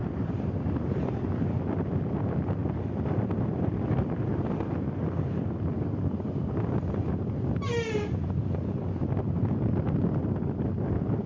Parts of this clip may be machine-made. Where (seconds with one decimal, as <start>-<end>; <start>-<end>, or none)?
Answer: none